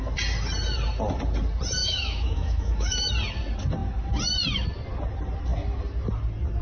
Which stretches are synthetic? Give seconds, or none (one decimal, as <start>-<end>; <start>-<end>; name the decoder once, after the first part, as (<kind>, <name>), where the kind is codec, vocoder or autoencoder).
1.8-3.1 (autoencoder, DAC-VAE)